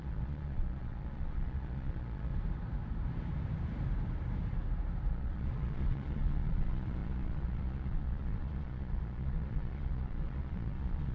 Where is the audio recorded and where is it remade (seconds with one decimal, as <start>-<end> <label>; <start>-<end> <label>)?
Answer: 0.0-2.3 remade; 2.3-5.1 recorded; 5.1-11.1 remade